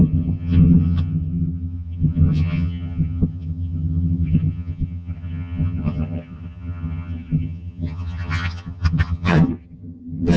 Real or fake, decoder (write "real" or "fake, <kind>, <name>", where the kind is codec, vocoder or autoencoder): fake, vocoder, HiFi-GAN